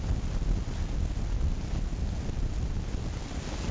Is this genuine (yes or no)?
yes